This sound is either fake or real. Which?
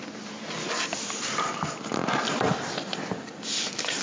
real